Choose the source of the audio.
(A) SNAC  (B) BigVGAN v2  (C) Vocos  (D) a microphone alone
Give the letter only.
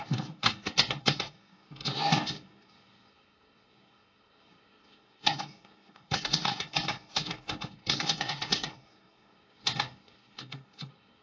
A